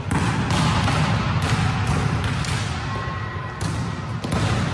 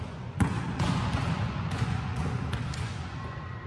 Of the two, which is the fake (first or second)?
second